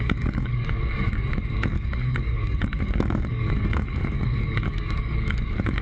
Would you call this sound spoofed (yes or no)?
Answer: yes